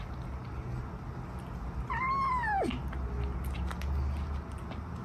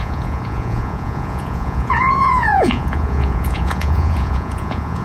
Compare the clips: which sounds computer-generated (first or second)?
second